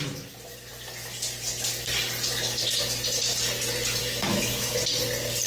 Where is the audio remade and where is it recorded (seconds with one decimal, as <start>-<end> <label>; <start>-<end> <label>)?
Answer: 0.0-4.0 recorded; 4.0-4.8 remade; 4.8-5.5 recorded